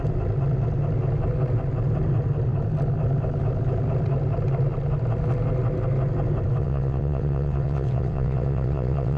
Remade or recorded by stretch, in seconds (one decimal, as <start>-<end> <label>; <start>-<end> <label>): 0.0-6.6 recorded; 6.6-9.2 remade